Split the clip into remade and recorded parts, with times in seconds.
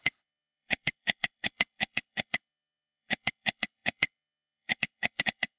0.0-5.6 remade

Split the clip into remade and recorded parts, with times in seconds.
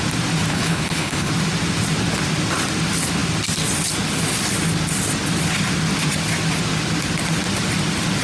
0.0-0.5 recorded; 0.5-1.3 remade; 1.3-8.2 recorded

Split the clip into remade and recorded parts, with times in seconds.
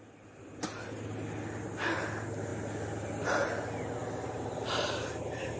0.0-5.6 recorded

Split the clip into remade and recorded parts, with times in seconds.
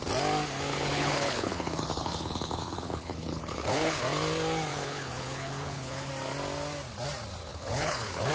0.0-0.7 recorded; 0.7-4.0 remade; 4.0-4.7 recorded; 4.7-6.1 remade; 6.1-7.5 recorded; 7.5-8.3 remade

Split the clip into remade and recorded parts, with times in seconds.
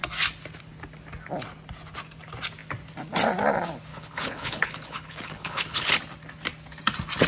0.0-3.9 recorded; 3.9-6.0 remade; 6.0-7.3 recorded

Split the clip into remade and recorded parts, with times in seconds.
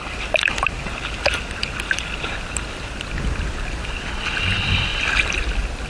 0.0-5.9 recorded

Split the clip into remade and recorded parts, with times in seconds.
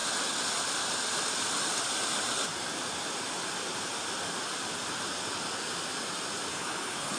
0.0-6.5 recorded; 6.5-7.2 remade